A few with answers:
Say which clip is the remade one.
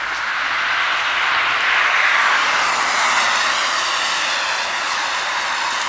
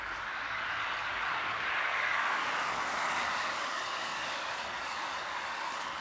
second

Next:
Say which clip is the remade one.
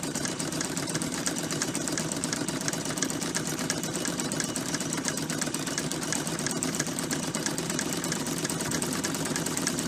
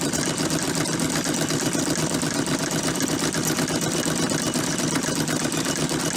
first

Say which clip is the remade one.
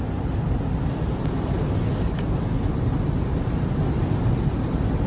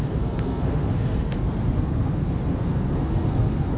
second